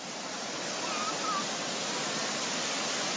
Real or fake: real